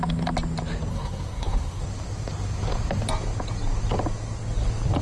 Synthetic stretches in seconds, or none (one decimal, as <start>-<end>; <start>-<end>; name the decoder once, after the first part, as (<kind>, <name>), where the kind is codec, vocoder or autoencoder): 0.9-1.8 (codec, SNAC)